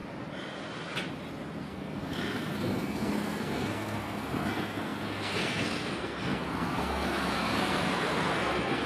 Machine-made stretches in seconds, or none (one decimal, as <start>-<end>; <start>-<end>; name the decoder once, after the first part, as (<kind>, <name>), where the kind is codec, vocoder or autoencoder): 1.6-8.9 (codec, SNAC)